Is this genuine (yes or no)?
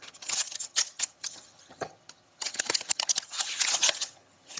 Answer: no